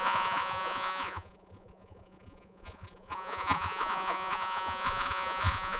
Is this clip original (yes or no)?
no